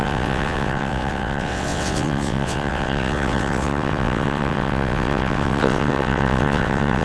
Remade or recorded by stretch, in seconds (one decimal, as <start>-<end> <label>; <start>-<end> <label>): 0.0-7.0 remade